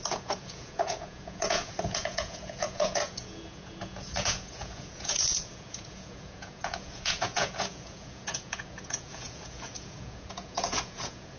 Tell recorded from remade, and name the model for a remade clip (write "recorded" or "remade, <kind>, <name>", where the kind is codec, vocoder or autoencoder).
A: remade, vocoder, Vocos